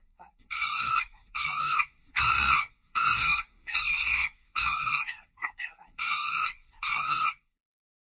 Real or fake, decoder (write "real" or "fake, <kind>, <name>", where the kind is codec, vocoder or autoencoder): fake, codec, SNAC